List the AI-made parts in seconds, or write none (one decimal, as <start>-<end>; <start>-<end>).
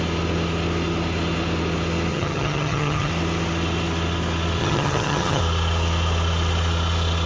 2.1-3.1; 4.6-5.4